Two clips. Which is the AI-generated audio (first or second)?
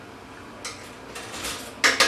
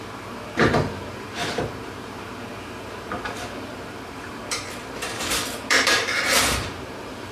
second